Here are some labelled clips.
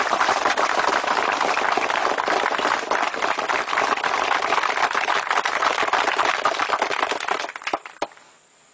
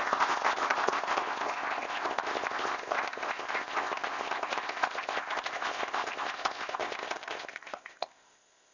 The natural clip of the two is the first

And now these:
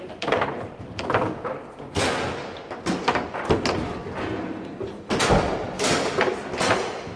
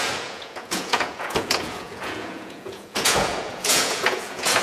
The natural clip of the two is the first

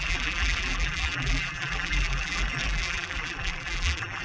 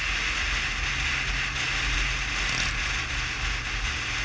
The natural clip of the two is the second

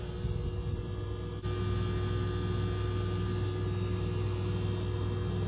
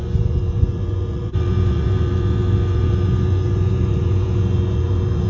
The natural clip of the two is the first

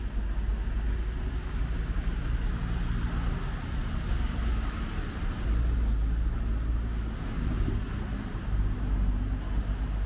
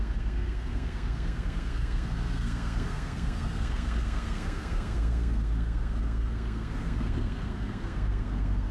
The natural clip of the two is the first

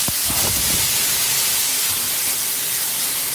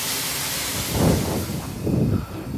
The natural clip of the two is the second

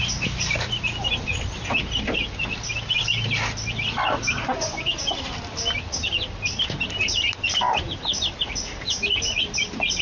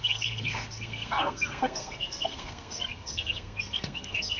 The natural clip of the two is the first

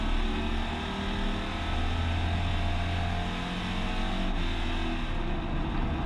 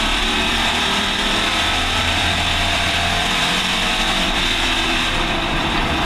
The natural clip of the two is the first